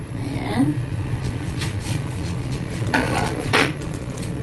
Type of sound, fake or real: fake